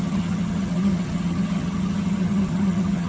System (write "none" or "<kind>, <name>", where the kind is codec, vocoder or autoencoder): vocoder, HiFi-GAN